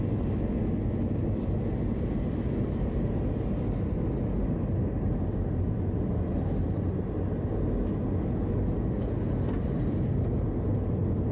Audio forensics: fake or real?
real